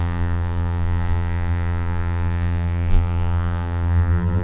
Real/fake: fake